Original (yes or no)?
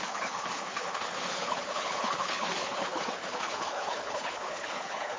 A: no